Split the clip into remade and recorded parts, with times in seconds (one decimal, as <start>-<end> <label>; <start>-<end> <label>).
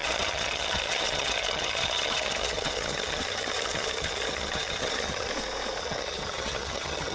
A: 0.0-5.3 remade; 5.3-5.8 recorded; 5.8-7.1 remade